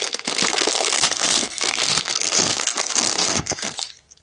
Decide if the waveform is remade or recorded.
remade